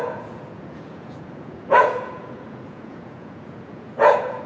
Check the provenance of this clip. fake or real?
fake